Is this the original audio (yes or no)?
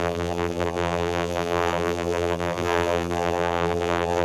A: no